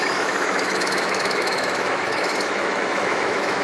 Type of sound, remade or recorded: remade